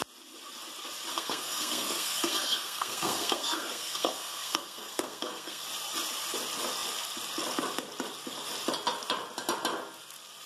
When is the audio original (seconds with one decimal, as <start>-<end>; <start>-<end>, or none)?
0.0-1.1; 5.6-10.5